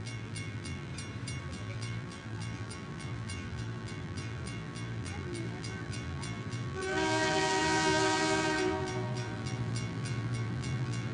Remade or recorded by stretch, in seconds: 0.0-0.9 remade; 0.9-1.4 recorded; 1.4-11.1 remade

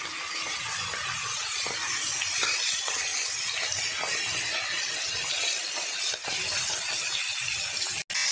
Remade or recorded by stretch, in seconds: 0.0-8.3 recorded

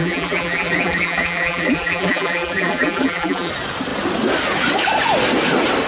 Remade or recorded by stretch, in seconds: 0.0-3.5 remade; 3.5-5.9 recorded